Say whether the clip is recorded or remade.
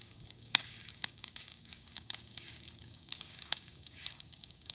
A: remade